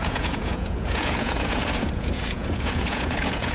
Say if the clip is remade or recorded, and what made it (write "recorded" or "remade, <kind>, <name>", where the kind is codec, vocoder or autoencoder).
remade, vocoder, Vocos